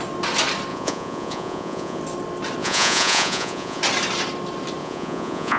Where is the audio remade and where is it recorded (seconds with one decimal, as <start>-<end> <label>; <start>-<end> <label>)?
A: 0.0-0.7 recorded; 0.7-2.0 remade; 2.0-2.6 recorded; 2.6-3.8 remade; 3.8-4.8 recorded; 4.8-5.6 remade